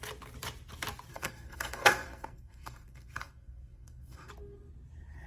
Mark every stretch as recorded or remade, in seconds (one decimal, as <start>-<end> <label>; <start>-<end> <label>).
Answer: 0.0-1.1 recorded; 1.1-4.3 remade; 4.3-5.3 recorded